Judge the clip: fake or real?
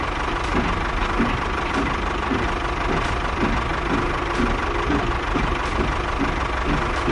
real